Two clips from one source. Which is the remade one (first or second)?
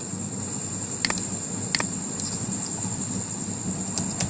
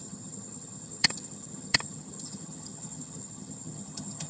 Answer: second